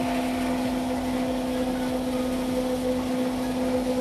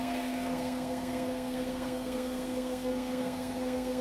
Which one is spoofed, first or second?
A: second